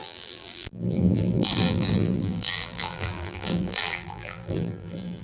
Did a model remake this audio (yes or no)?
yes